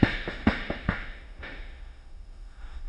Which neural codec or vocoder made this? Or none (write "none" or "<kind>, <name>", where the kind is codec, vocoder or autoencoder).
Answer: autoencoder, DAC-VAE